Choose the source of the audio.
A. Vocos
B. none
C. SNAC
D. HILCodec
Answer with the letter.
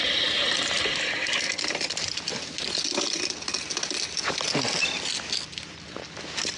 B